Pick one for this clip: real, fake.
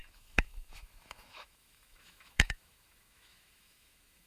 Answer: fake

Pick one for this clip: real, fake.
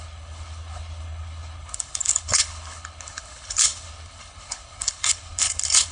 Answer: fake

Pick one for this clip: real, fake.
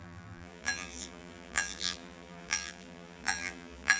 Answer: fake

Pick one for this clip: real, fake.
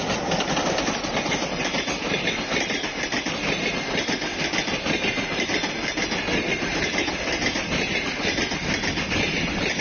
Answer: real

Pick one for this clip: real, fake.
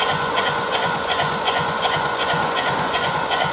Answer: fake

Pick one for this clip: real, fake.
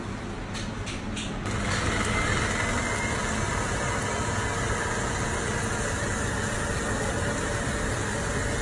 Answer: real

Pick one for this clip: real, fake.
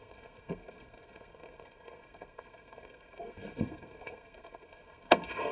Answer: fake